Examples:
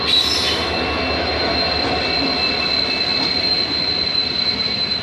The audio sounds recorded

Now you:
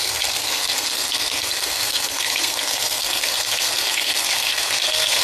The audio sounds remade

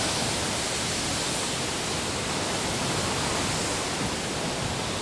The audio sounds recorded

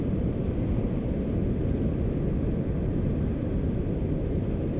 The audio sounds recorded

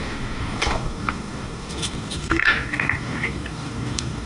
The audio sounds remade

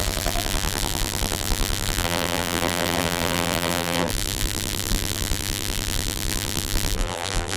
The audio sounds remade